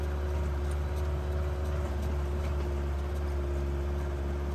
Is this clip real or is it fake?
real